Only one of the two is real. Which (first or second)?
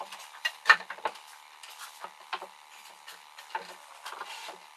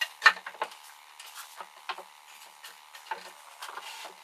second